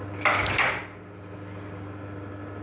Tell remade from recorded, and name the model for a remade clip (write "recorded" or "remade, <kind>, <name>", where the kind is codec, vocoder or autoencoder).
recorded